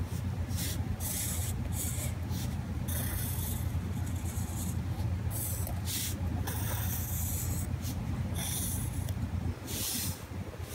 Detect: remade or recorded recorded